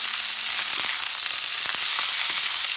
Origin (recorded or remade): recorded